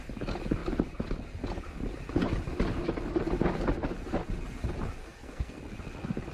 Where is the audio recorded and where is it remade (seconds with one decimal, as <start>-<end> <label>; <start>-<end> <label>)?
0.0-5.0 recorded; 5.0-5.6 remade; 5.6-6.3 recorded